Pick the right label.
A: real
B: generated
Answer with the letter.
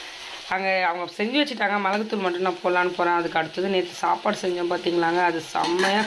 A